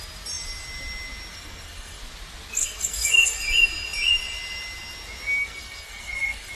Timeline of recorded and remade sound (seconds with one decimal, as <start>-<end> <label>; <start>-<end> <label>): 0.0-1.3 recorded; 1.3-2.0 remade; 2.0-2.6 recorded; 2.6-3.4 remade; 3.4-5.4 recorded; 5.4-6.5 remade

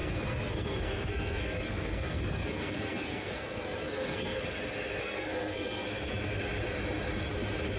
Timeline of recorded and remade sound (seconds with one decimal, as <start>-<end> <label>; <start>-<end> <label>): 0.0-4.4 remade; 4.4-5.0 recorded; 5.0-6.1 remade; 6.1-7.8 recorded

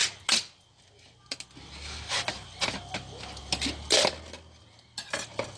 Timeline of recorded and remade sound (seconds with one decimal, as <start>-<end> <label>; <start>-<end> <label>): 0.0-5.6 recorded

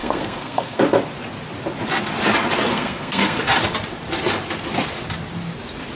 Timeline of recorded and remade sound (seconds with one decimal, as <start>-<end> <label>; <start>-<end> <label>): 0.0-0.8 remade; 0.8-2.7 recorded; 2.7-3.4 remade; 3.4-5.9 recorded